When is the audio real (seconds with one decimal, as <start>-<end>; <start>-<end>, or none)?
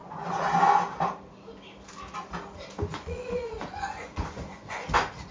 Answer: 0.6-2.9; 4.8-5.3